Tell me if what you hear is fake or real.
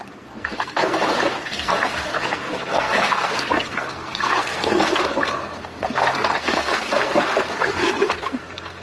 fake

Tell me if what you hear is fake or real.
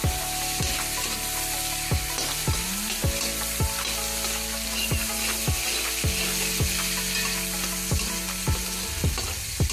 real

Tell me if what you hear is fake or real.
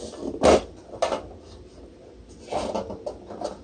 real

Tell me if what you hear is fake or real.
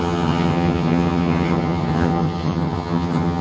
fake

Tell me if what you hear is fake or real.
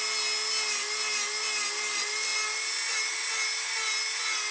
real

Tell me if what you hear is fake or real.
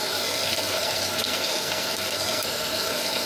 fake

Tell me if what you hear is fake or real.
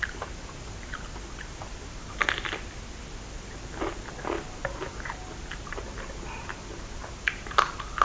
real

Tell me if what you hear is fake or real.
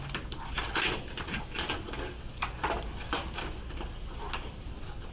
real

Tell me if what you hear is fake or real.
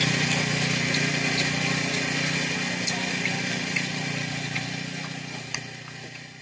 real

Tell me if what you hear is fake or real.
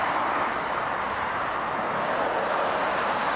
real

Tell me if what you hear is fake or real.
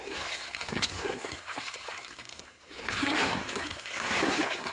fake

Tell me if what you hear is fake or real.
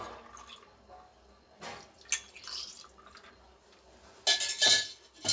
real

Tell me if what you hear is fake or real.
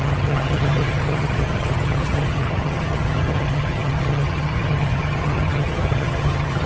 fake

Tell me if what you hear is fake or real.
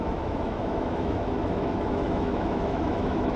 fake